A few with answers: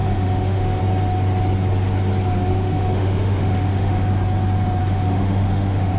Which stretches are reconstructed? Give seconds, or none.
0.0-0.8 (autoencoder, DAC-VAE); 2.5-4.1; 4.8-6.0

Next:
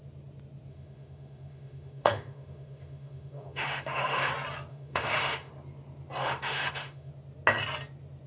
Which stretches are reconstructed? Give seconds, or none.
0.7-4.3 (autoencoder, DAC-VAE); 4.7-5.5; 6.2-7.1

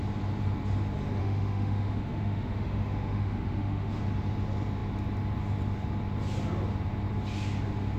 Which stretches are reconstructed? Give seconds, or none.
1.2-4.0 (autoencoder, DAC-VAE)

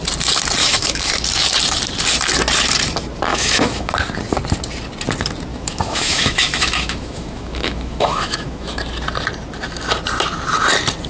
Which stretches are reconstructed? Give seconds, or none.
0.6-1.1 (autoencoder, DAC-VAE); 3.3-3.9; 5.5-8.8